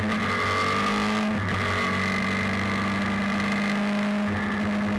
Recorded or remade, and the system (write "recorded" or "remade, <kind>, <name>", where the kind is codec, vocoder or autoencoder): recorded